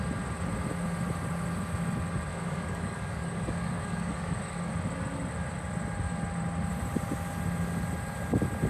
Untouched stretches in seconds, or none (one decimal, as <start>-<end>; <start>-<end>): 0.0-2.3; 4.7-8.7